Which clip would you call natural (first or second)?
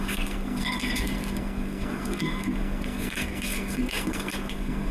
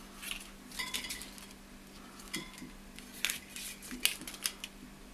second